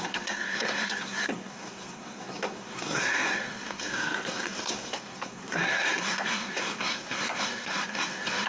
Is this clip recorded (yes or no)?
no